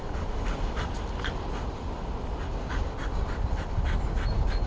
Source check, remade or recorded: recorded